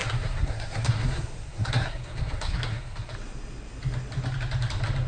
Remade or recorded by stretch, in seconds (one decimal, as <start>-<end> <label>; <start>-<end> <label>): 0.0-3.1 remade; 3.1-5.1 recorded